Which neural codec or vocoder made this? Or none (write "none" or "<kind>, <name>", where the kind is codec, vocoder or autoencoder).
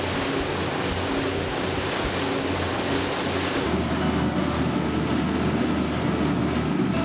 none